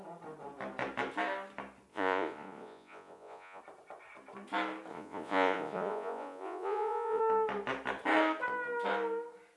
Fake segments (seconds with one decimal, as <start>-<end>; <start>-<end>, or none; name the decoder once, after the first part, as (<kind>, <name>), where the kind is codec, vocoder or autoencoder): 1.9-3.6 (vocoder, Vocos); 4.9-7.2